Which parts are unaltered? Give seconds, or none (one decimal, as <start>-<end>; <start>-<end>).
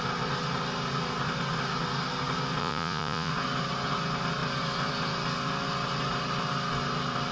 0.0-2.6; 3.3-7.3